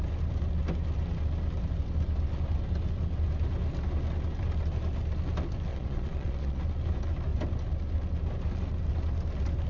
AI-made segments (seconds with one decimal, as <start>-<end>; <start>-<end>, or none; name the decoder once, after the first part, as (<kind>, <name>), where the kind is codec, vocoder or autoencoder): 5.7-6.6 (vocoder, Vocos)